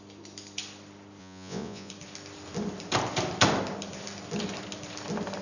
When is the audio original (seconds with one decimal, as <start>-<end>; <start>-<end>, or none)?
0.0-1.2; 1.9-5.4